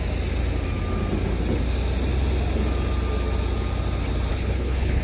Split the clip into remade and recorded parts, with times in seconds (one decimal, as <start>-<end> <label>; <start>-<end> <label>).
0.0-4.3 recorded; 4.3-5.0 remade